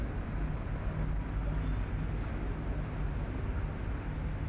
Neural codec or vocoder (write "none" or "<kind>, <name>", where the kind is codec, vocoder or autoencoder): none